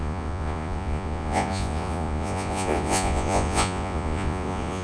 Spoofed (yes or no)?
yes